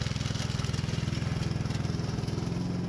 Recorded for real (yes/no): yes